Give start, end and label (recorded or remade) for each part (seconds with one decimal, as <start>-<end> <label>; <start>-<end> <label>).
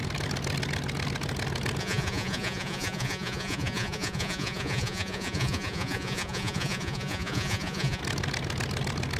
0.0-1.8 recorded; 1.8-8.0 remade; 8.0-9.2 recorded